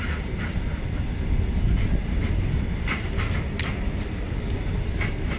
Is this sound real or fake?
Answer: real